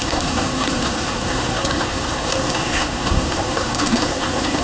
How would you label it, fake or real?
fake